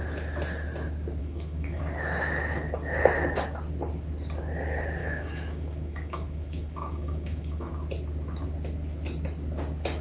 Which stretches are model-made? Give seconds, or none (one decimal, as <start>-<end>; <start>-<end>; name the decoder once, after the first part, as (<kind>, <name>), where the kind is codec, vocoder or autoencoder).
1.2-1.8 (autoencoder, DAC-VAE); 5.0-7.7